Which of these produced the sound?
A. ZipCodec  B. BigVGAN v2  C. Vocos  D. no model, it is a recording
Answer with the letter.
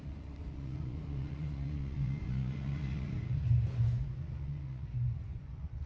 C